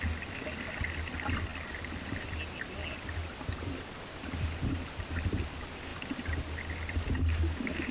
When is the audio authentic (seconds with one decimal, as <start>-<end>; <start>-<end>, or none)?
0.0-7.9